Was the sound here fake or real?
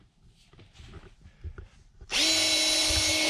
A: real